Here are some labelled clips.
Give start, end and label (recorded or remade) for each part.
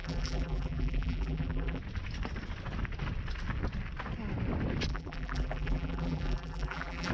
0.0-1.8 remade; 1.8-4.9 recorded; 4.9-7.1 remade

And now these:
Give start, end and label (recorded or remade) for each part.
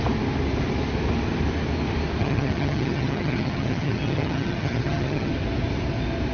0.0-2.2 recorded; 2.2-5.3 remade; 5.3-6.3 recorded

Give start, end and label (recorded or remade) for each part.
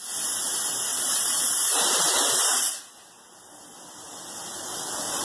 0.0-0.9 recorded; 0.9-2.8 remade; 2.8-4.5 recorded; 4.5-5.2 remade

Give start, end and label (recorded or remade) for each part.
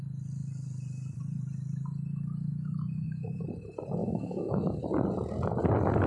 0.0-2.5 recorded; 2.5-3.4 remade; 3.4-4.0 recorded; 4.0-4.8 remade; 4.8-6.1 recorded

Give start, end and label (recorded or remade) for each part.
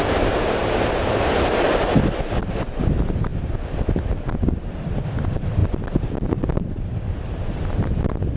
0.0-0.6 remade; 0.6-2.8 recorded; 2.8-3.3 remade; 3.3-4.5 recorded; 4.5-5.6 remade; 5.6-6.7 recorded; 6.7-8.4 remade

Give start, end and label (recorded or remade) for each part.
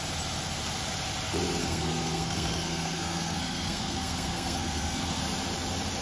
0.0-1.6 recorded; 1.6-5.2 remade; 5.2-6.0 recorded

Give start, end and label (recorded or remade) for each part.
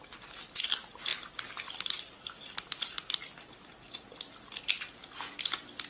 0.0-5.9 recorded